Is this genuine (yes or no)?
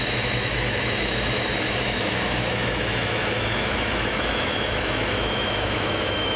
no